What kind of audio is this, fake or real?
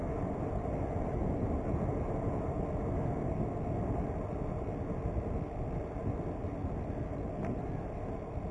real